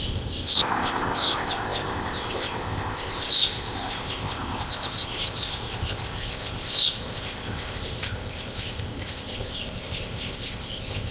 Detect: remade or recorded remade